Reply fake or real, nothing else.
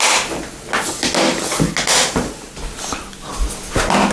real